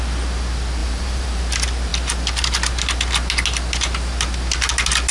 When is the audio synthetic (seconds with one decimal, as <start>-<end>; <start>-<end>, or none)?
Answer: 0.8-1.4

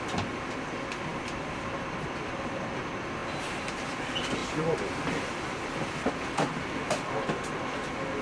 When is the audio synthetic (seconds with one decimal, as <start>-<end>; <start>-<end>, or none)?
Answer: 1.1-2.8; 4.4-5.2

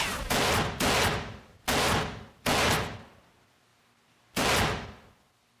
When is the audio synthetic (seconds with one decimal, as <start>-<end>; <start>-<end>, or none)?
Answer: none